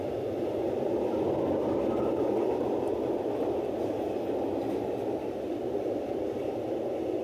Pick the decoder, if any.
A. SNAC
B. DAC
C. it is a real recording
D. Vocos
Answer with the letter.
C